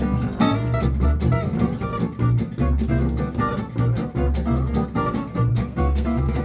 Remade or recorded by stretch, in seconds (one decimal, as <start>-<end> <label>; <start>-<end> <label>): 0.0-5.5 recorded; 5.5-6.4 remade